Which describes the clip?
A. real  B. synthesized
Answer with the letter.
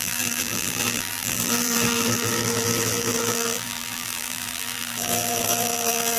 B